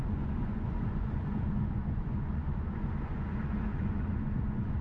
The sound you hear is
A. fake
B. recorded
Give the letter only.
A